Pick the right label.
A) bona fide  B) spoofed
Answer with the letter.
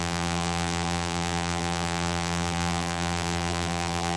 B